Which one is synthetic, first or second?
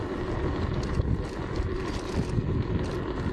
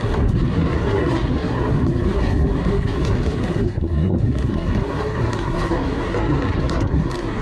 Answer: second